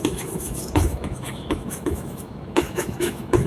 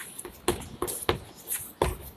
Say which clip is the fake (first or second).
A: first